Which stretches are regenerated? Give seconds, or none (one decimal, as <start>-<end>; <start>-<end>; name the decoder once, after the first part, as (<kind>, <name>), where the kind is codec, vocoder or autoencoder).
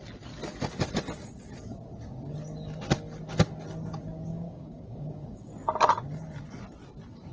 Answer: 4.3-5.5 (codec, DAC)